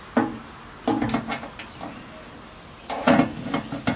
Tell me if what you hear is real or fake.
real